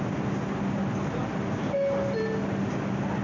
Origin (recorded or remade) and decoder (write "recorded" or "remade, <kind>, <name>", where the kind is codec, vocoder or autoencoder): recorded